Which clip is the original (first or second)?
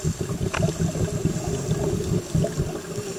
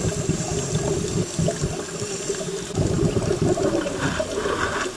first